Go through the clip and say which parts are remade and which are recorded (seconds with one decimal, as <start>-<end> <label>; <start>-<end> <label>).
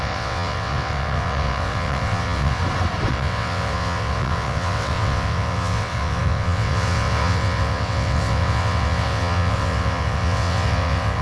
0.0-2.6 remade; 2.6-3.1 recorded; 3.1-11.2 remade